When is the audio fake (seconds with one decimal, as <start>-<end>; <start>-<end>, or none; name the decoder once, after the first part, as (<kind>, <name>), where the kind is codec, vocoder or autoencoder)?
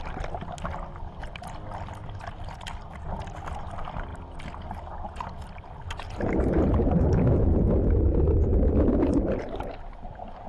none